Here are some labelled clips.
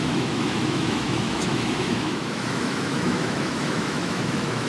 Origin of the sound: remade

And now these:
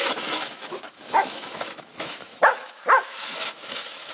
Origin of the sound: remade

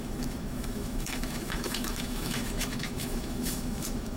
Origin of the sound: remade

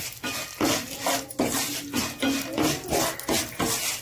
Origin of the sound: recorded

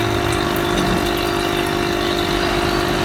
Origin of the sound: recorded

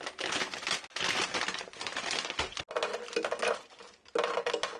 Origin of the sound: recorded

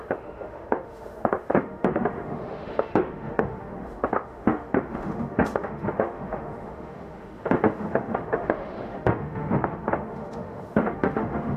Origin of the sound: remade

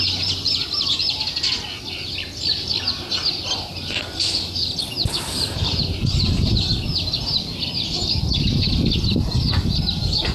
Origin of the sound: recorded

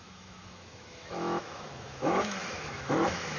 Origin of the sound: remade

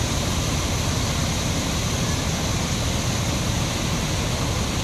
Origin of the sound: recorded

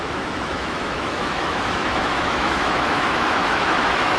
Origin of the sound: remade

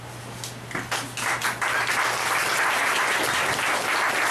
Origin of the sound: recorded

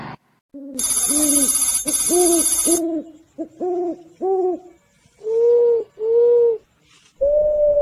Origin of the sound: recorded